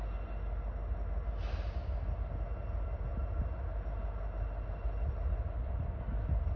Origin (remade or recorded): recorded